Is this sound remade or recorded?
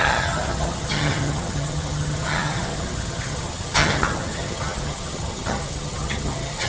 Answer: remade